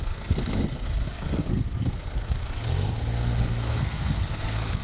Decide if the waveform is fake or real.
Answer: fake